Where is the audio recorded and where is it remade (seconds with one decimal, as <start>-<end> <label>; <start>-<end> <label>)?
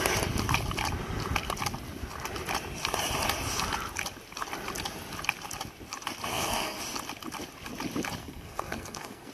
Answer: 0.0-6.3 recorded; 6.3-6.8 remade; 6.8-8.2 recorded; 8.2-9.3 remade